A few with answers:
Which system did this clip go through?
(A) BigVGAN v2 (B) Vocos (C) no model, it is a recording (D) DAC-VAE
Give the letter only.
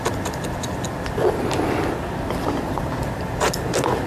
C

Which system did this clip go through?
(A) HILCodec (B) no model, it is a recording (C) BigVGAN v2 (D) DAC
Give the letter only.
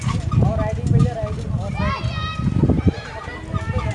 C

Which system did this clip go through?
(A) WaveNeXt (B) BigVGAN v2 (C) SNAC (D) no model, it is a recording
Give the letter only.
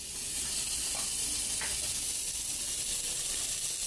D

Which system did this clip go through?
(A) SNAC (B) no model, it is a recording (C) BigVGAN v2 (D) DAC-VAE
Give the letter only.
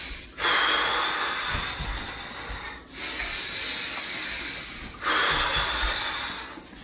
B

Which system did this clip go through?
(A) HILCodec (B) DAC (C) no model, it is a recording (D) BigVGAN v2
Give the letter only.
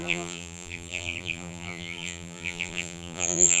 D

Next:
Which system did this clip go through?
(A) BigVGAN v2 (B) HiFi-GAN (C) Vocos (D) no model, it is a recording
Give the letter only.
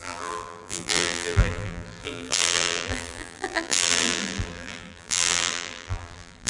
A